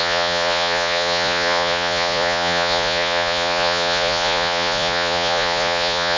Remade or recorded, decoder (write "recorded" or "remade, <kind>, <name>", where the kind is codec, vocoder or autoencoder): remade, vocoder, Vocos